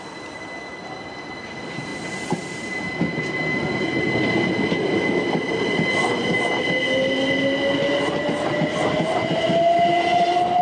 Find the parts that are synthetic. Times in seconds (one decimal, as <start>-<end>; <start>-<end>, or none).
none